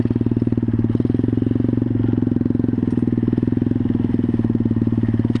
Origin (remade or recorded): recorded